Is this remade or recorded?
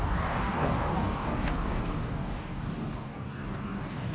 remade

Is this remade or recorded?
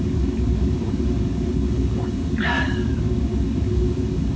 remade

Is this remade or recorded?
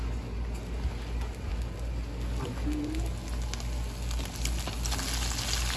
recorded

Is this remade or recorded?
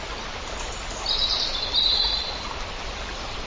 recorded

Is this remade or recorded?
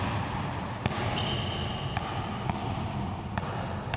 recorded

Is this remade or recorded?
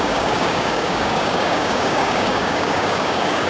remade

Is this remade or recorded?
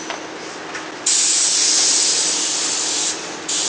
recorded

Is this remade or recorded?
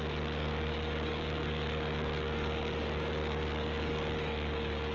remade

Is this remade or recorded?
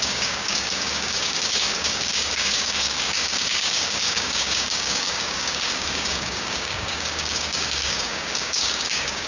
remade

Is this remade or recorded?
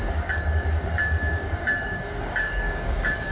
remade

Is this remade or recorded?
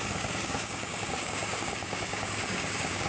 remade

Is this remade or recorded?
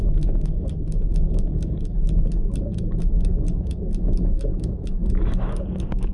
remade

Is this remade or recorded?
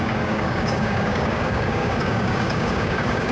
remade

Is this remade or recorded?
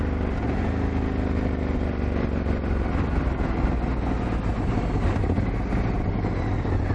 recorded